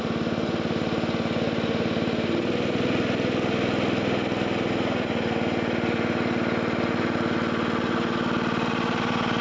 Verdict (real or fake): real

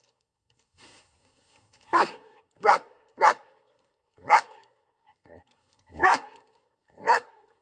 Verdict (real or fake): fake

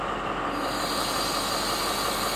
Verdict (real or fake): real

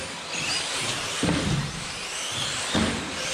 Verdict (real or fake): real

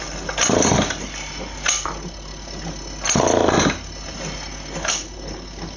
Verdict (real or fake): real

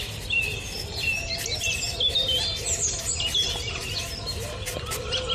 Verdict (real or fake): real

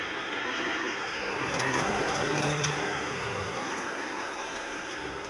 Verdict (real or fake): fake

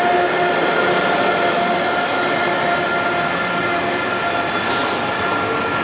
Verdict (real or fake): real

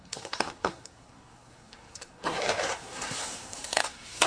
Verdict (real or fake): fake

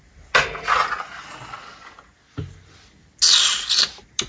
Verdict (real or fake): real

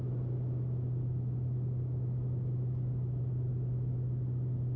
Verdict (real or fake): real